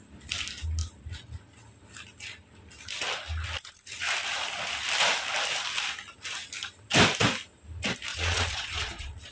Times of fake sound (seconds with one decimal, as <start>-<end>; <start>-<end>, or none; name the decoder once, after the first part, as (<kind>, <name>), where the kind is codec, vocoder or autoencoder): 8.1-9.3 (vocoder, Vocos)